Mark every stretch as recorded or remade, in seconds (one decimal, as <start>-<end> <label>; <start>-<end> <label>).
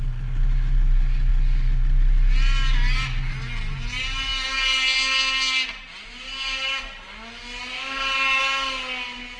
0.0-9.4 recorded